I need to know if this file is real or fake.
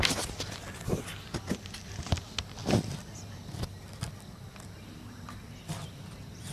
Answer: real